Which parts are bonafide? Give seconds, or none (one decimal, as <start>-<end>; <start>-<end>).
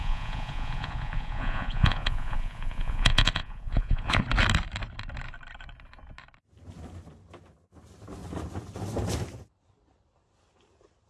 4.2-11.1